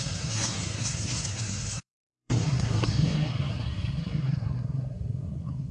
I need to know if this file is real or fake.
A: fake